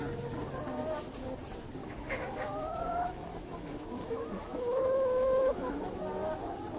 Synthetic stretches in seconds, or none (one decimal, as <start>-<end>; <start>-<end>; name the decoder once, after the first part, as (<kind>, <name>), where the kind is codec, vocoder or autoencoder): 1.8-5.9 (autoencoder, DAC-VAE)